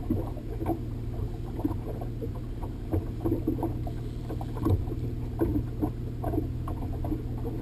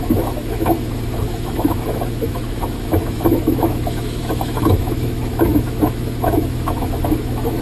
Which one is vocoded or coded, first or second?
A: second